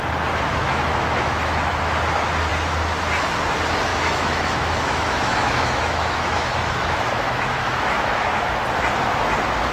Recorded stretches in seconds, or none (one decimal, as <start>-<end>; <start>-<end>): 0.0-0.5; 1.7-3.9; 8.4-9.7